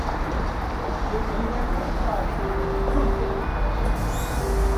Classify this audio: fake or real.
real